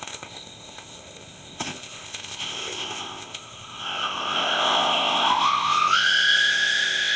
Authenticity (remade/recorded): remade